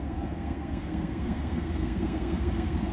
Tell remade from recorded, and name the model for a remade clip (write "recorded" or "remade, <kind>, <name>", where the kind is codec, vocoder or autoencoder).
remade, codec, SNAC